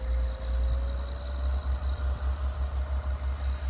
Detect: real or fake real